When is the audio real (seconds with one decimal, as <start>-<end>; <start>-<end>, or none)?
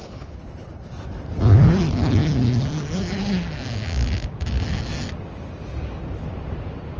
0.7-7.0